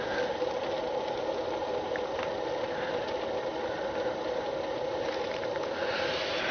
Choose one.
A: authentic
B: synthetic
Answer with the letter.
A